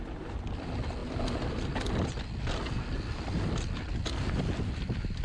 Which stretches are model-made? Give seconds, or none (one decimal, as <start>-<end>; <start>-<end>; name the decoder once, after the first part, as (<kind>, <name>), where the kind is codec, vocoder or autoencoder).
none